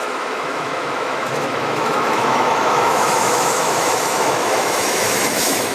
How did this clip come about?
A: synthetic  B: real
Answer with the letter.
A